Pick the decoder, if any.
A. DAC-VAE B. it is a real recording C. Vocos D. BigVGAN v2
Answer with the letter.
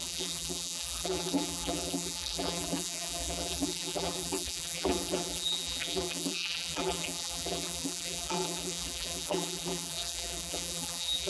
D